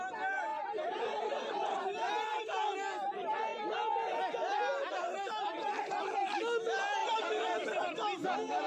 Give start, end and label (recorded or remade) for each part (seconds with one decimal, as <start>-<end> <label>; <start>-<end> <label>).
0.0-0.5 recorded; 0.5-2.1 remade; 2.1-7.0 recorded; 7.0-7.8 remade; 7.8-8.7 recorded